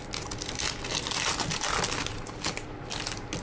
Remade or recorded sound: recorded